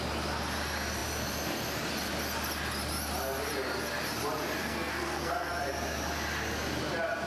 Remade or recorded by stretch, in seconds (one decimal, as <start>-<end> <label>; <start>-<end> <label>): 0.0-4.6 recorded; 4.6-5.5 remade; 5.5-7.3 recorded